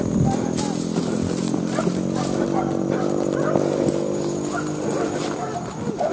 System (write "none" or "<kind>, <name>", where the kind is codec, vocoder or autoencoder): none